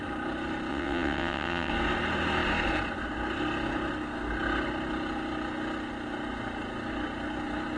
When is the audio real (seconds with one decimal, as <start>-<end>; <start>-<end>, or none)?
0.0-0.7; 1.7-7.8